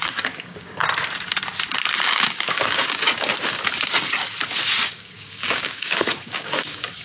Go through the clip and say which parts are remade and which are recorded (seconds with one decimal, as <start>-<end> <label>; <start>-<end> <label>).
0.0-0.8 remade; 0.8-1.9 recorded; 1.9-3.3 remade; 3.3-4.8 recorded; 4.8-7.0 remade